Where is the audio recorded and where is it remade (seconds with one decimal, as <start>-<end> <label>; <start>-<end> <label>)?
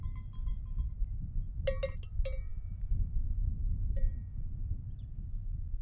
0.0-2.5 recorded; 2.5-3.1 remade; 3.1-3.6 recorded; 3.6-5.8 remade